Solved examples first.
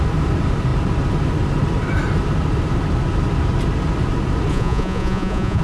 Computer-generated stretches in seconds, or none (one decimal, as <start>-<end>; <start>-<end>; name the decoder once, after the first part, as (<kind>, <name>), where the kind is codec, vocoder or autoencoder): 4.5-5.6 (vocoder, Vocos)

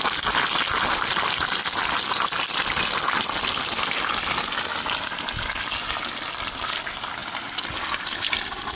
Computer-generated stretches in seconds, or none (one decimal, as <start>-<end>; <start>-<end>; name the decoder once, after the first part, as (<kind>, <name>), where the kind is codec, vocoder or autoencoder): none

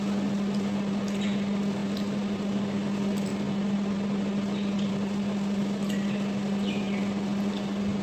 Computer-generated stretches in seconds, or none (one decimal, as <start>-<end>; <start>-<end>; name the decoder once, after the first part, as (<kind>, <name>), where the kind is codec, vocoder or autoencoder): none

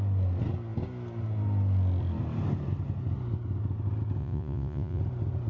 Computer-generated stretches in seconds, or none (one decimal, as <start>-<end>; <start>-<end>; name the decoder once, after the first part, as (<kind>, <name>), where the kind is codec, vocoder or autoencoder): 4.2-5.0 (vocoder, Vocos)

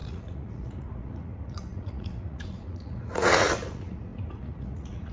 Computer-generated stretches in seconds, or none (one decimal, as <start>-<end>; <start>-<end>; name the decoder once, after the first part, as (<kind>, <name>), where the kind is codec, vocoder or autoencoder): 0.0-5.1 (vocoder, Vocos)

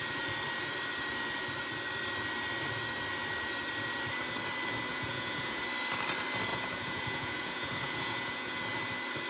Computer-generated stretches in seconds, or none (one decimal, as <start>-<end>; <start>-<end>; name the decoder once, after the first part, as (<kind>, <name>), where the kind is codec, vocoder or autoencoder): 4.9-5.6 (vocoder, Vocos); 6.5-8.6

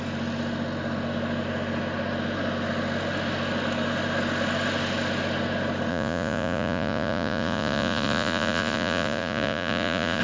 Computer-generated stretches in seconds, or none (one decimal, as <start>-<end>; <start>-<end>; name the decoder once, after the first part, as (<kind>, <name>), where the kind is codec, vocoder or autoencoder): 5.9-10.2 (vocoder, Vocos)